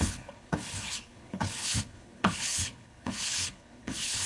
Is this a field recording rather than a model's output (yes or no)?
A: no